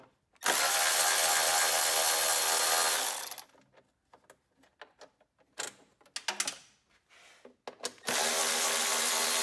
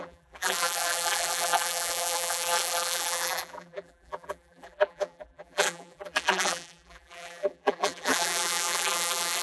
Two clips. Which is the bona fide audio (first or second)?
first